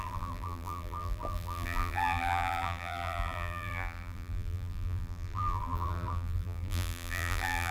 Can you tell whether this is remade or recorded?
remade